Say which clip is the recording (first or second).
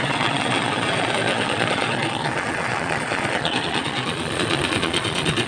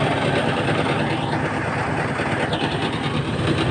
second